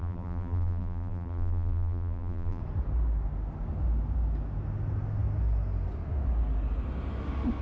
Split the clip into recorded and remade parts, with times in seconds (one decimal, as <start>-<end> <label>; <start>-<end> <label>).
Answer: 0.0-2.6 remade; 2.6-7.6 recorded